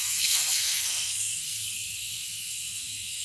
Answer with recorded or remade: remade